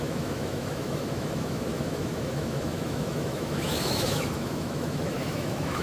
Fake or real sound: fake